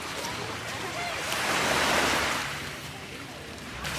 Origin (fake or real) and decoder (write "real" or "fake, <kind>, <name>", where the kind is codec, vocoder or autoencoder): fake, vocoder, BigVGAN v2